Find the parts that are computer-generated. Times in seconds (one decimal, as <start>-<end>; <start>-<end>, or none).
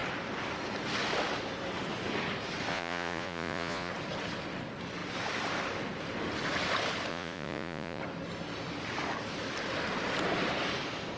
2.7-3.9; 7.1-8.0